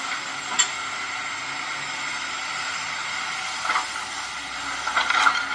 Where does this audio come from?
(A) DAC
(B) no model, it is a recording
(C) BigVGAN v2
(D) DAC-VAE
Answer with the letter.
B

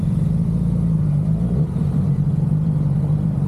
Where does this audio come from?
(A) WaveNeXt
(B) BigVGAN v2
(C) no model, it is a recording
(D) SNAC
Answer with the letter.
B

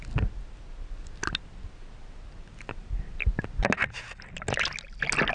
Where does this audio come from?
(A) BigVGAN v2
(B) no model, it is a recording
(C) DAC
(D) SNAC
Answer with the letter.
B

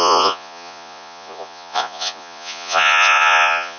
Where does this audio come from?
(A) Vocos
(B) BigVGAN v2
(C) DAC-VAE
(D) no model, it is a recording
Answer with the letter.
A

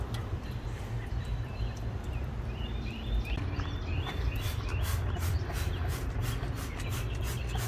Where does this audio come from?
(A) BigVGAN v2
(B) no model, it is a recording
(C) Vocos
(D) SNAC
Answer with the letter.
A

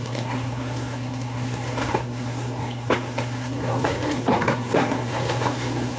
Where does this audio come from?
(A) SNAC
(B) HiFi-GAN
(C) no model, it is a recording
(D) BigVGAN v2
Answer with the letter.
A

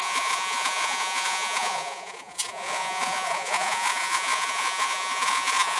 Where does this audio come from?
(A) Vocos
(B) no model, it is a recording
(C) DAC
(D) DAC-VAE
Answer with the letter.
A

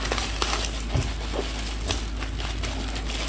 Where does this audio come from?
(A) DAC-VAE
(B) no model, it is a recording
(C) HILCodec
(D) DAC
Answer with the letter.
B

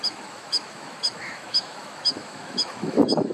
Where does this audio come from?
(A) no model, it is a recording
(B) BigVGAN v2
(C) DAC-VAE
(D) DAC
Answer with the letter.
C